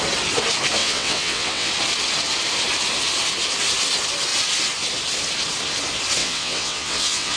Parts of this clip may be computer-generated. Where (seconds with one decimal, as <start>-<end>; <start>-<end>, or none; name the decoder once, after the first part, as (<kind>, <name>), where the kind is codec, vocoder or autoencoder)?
0.8-1.7 (vocoder, WaveNeXt); 6.2-7.4

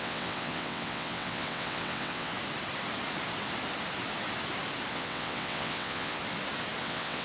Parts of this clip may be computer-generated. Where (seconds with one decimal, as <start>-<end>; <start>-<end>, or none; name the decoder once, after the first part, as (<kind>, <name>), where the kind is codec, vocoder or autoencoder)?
0.0-2.3 (vocoder, WaveNeXt); 4.9-6.2; 6.8-7.2

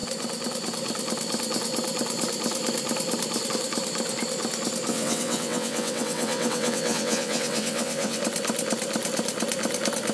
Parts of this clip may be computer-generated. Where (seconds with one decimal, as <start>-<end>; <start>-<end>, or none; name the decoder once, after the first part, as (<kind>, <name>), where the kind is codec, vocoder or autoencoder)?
4.9-8.2 (vocoder, WaveNeXt)